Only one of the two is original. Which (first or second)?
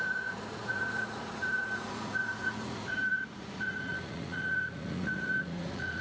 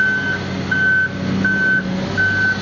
second